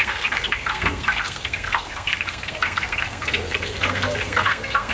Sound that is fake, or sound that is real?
fake